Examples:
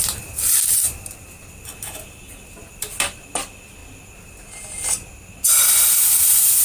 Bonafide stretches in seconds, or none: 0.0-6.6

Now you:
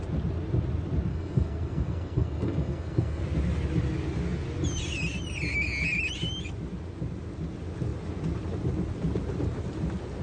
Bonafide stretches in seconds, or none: 0.0-1.1; 3.2-10.2

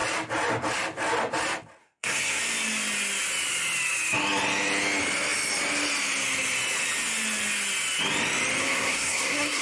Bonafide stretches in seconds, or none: 0.0-1.8; 2.4-8.6

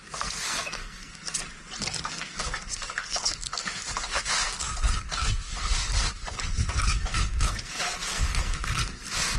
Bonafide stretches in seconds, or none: 1.4-2.0